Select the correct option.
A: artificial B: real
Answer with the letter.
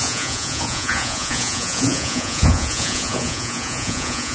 A